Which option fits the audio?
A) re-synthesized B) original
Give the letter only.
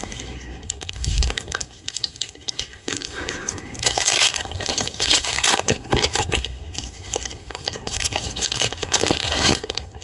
A